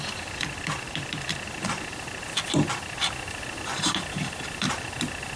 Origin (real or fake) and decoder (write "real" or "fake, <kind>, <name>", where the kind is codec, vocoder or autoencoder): fake, vocoder, BigVGAN v2